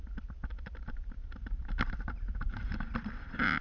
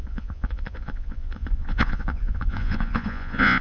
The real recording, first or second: first